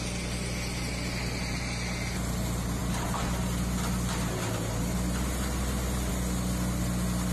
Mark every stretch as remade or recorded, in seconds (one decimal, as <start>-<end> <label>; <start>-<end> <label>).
0.0-7.3 recorded